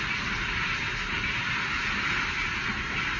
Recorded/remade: recorded